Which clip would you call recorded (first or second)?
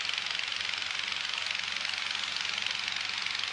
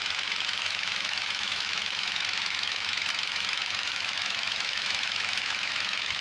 first